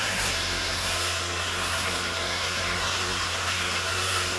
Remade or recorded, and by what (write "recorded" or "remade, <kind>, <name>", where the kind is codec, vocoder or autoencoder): remade, codec, SNAC